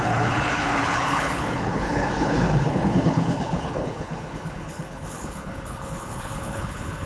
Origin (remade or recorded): remade